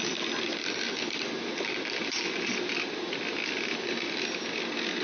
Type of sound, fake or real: real